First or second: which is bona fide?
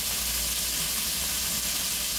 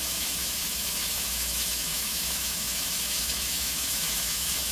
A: first